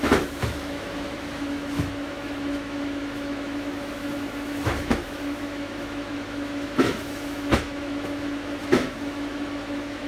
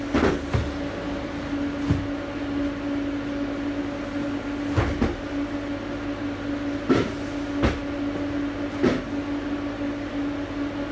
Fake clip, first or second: first